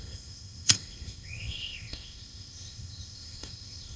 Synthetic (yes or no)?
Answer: yes